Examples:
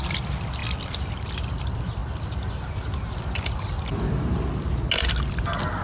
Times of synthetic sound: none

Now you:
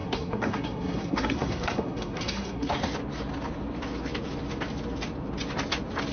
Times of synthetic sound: 0.0-2.7

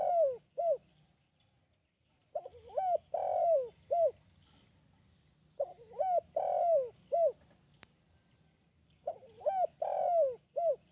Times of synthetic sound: none

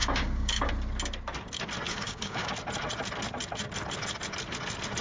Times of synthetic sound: 0.0-0.7; 1.9-2.5

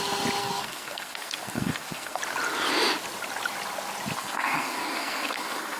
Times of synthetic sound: 0.4-2.2; 4.2-5.8

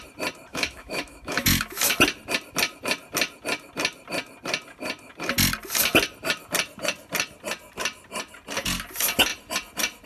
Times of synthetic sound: 0.5-1.8

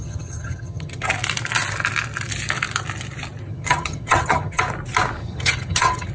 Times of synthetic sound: 0.0-1.1; 3.5-4.6; 5.2-6.1

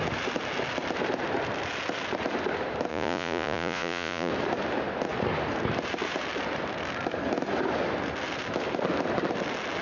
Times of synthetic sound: 2.9-4.3